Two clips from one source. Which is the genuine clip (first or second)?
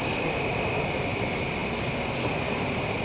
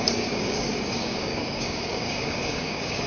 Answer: first